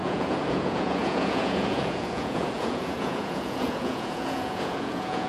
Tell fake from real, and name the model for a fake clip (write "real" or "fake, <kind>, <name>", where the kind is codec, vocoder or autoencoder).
fake, vocoder, Vocos